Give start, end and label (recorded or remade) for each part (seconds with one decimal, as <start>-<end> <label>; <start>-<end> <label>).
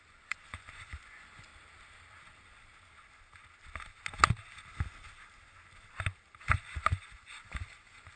0.0-1.5 remade; 1.5-6.4 recorded; 6.4-8.2 remade